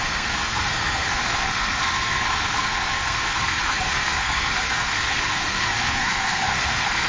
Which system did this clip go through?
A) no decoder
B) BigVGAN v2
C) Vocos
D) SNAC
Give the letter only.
D